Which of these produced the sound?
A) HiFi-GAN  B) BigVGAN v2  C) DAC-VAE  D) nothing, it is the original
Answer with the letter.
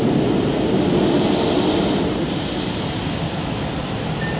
D